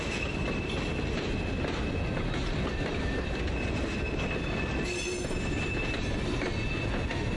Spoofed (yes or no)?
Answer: no